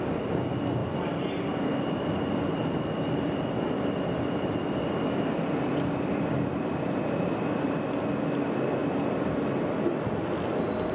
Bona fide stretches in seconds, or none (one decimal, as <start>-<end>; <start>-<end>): 0.0-10.9